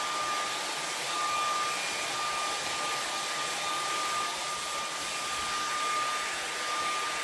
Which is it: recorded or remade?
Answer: recorded